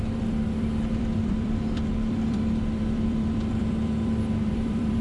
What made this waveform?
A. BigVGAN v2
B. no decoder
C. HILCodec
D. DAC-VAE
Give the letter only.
A